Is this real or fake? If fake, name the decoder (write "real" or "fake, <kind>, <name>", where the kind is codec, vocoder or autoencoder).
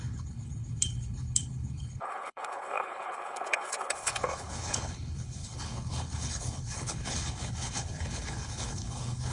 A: fake, codec, HILCodec